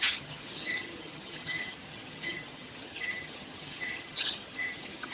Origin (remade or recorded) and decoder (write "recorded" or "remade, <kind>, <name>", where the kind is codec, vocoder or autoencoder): remade, vocoder, HiFi-GAN